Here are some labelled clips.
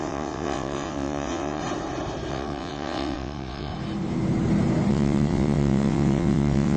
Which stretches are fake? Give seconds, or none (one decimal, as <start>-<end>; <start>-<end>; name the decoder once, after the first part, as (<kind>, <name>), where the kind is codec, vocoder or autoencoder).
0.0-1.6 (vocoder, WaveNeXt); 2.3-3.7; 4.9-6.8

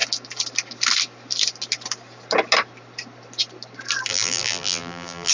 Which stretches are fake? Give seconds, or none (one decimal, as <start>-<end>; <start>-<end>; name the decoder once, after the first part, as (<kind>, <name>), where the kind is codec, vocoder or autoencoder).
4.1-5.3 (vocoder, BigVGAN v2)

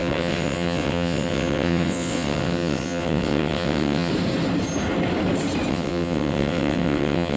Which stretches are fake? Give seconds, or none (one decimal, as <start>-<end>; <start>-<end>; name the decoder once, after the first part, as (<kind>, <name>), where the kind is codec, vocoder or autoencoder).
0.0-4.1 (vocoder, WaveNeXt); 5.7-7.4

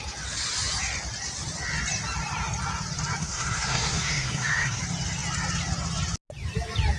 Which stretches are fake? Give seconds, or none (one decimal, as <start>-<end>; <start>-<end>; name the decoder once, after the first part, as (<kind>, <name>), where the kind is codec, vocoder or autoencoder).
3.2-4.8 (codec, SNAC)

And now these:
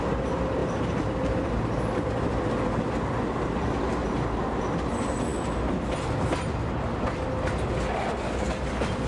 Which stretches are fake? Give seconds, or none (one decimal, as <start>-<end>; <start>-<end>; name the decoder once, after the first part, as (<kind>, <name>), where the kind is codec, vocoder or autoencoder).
0.6-2.1 (vocoder, BigVGAN v2); 4.0-4.6